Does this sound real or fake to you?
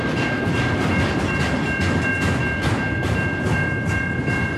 real